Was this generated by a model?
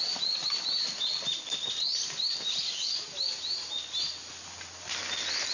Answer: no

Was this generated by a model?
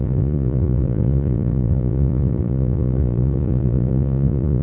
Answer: yes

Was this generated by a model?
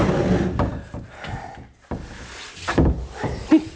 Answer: no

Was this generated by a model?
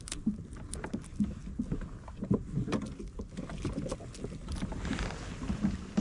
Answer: no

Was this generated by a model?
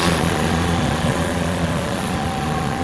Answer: yes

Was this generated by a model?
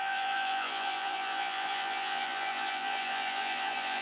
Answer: yes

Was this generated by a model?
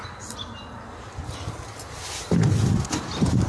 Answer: no